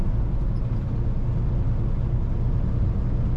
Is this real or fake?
real